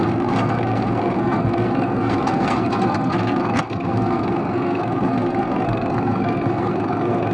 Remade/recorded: remade